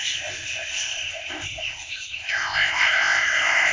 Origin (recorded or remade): remade